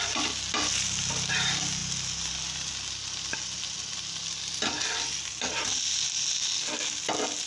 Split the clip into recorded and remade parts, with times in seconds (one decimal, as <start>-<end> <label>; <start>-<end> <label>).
0.0-7.5 recorded